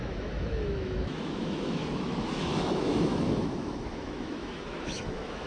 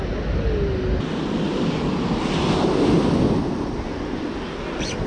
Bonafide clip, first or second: second